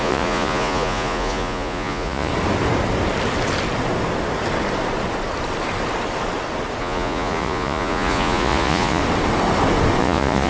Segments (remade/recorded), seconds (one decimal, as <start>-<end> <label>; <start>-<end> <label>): 0.0-2.3 remade; 2.3-6.8 recorded; 6.8-9.0 remade; 9.0-10.0 recorded; 10.0-10.5 remade